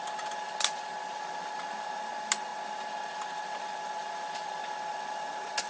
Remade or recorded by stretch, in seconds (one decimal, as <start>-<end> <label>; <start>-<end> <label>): 0.0-5.7 recorded